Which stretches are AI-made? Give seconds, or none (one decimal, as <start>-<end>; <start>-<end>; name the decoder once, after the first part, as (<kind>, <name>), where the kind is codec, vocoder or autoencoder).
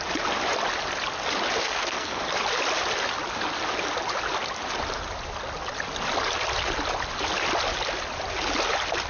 1.6-2.2 (codec, SNAC)